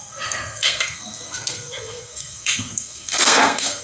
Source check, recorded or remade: remade